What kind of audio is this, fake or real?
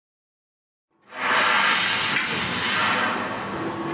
real